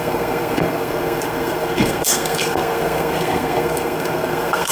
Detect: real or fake fake